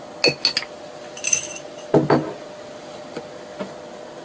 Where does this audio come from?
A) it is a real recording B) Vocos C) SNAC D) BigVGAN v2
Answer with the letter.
A